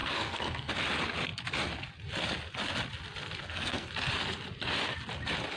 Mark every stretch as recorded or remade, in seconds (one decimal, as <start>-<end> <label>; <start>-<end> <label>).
0.0-0.7 remade; 0.7-3.4 recorded; 3.4-3.9 remade; 3.9-5.6 recorded